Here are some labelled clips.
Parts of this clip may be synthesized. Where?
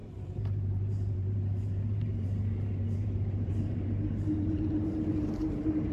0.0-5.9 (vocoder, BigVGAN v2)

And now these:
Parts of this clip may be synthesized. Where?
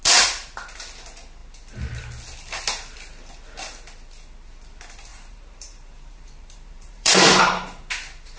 5.1-7.4 (vocoder, BigVGAN v2)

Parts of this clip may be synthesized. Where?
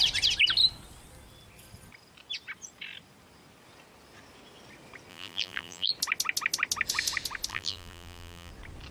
5.1-5.9 (vocoder, BigVGAN v2); 7.5-8.5